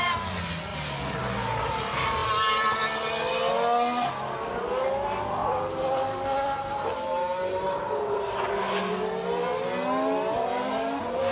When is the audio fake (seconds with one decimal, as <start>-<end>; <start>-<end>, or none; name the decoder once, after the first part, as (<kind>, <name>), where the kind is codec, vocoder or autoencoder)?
none